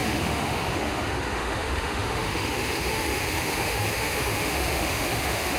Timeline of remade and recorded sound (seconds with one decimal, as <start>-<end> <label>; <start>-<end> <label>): 0.0-5.6 remade